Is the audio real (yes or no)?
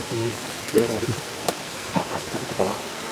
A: no